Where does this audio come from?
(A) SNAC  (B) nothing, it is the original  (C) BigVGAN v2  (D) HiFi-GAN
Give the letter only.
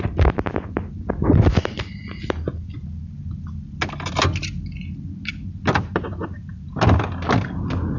B